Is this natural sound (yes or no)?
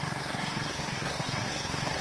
no